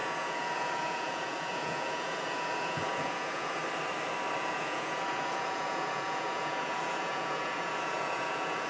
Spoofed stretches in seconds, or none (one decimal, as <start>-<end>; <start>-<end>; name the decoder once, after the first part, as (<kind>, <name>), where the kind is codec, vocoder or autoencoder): 0.0-3.6 (vocoder, Vocos); 4.4-8.7